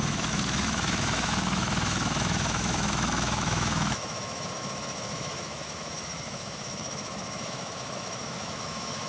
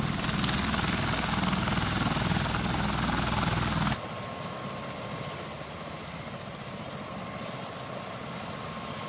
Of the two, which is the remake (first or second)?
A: first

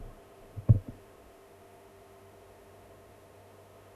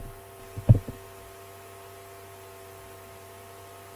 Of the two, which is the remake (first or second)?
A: first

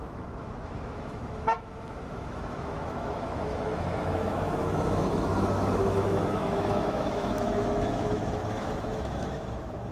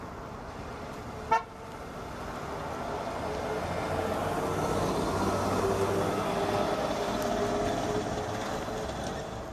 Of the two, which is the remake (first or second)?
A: first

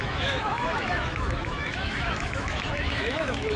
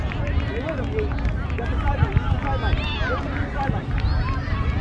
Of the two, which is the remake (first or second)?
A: first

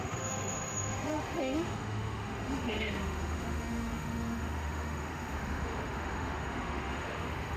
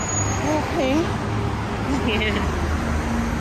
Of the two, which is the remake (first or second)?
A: first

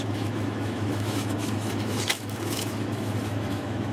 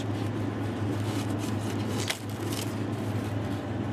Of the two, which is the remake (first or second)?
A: first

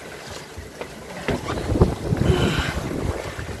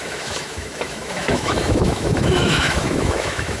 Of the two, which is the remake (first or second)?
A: second